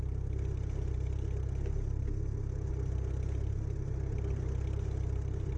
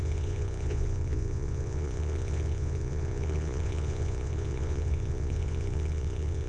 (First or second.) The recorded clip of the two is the first